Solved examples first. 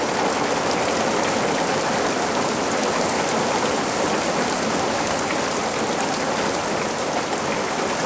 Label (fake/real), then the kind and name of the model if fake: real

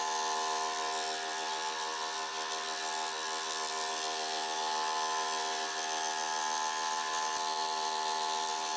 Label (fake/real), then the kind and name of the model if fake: real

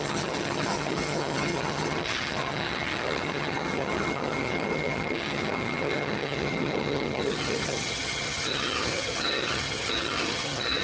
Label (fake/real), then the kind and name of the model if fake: fake, vocoder, HiFi-GAN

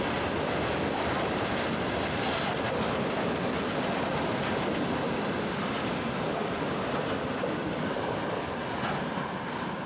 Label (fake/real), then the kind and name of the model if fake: real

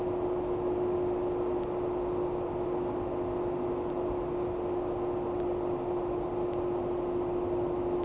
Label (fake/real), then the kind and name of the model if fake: real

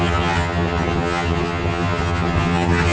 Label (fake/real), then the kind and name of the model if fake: fake, vocoder, HiFi-GAN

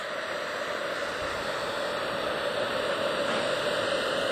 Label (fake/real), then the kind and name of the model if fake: real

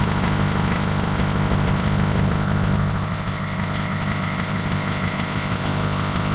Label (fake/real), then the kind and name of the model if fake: fake, codec, ZipCodec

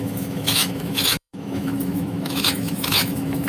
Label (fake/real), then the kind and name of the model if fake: fake, autoencoder, DAC-VAE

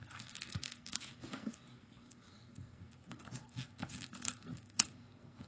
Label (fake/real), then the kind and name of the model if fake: fake, codec, SNAC